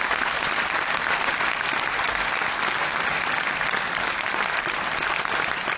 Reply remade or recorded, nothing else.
recorded